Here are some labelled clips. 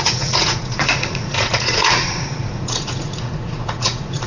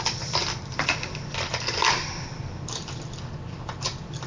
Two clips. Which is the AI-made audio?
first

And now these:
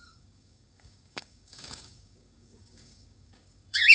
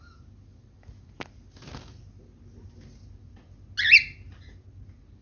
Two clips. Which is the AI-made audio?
first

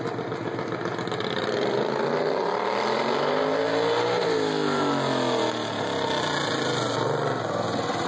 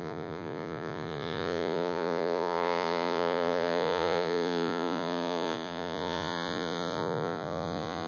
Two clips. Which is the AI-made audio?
second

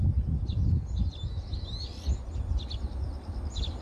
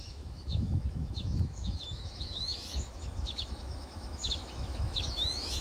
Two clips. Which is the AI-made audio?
second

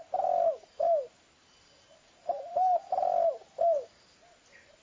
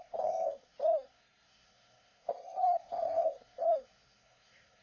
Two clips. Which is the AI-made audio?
second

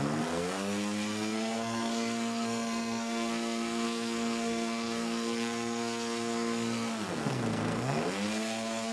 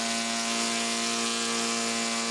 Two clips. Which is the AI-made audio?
first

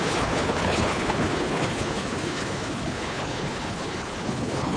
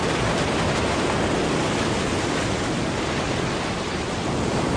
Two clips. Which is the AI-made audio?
first